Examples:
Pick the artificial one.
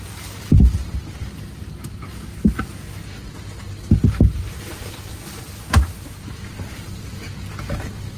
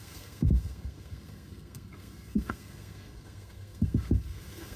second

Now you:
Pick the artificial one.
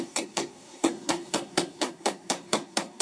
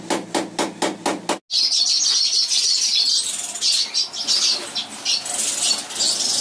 first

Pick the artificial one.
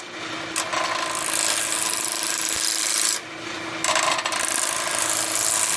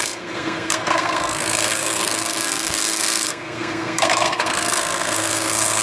second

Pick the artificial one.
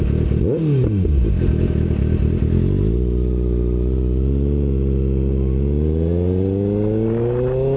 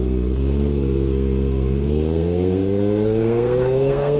second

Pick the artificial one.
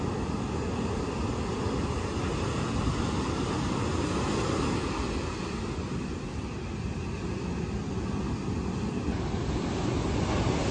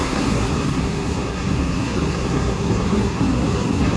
second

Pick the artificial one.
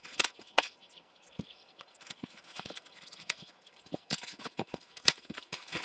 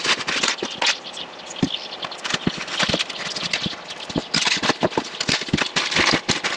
first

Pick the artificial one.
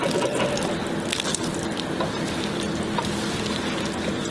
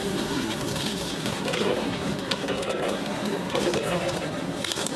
second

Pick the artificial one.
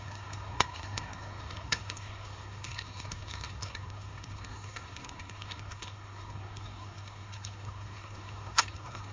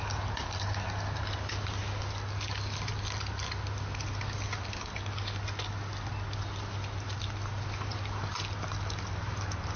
first